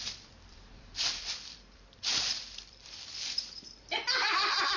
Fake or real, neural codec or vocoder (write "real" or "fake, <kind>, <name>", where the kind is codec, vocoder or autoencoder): fake, vocoder, BigVGAN v2